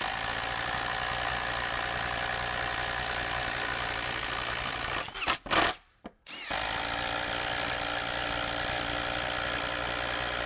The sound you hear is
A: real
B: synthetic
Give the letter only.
A